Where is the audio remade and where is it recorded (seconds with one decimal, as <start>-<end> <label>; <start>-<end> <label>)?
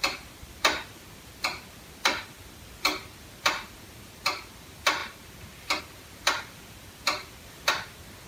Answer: 0.0-8.3 remade